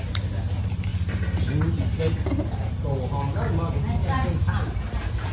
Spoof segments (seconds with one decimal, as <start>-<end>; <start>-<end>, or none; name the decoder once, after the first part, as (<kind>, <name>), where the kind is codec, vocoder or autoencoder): none